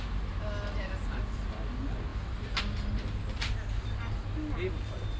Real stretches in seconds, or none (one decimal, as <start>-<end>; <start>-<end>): 0.0-5.2

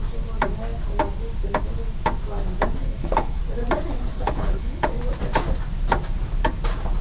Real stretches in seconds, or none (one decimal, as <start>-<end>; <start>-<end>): 0.0-2.8; 3.4-4.1; 4.9-7.0

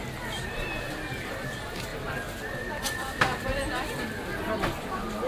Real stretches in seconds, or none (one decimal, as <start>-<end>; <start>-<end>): 0.0-5.3